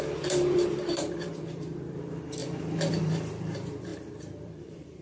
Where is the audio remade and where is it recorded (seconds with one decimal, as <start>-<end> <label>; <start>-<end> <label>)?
0.0-5.0 remade

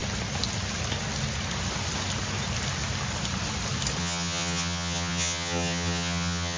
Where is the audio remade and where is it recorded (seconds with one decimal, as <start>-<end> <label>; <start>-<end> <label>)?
0.0-4.0 recorded; 4.0-6.6 remade